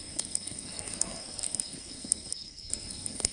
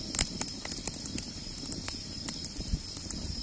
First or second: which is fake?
first